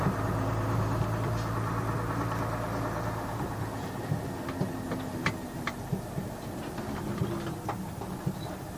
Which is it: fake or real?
real